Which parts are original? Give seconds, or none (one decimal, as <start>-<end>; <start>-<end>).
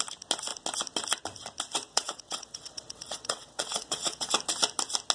0.0-1.9; 4.3-5.1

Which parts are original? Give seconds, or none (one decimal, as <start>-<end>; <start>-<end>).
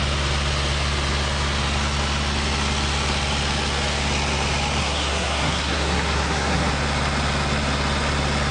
0.0-4.8; 6.7-8.5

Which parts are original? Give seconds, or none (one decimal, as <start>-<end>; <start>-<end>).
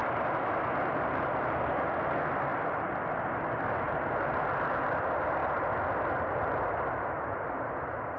0.5-2.5; 3.9-5.4; 6.3-8.2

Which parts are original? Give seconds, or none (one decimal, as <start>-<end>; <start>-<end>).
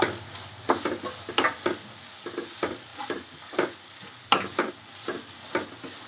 0.0-6.1